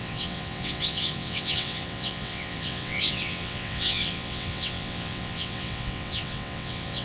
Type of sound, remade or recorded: remade